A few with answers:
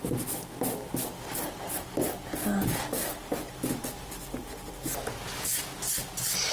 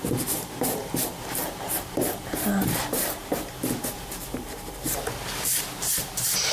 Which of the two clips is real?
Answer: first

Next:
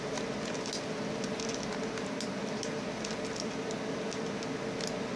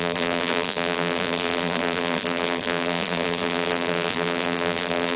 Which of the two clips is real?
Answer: first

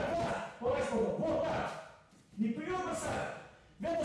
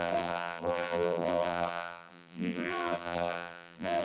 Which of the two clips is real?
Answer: first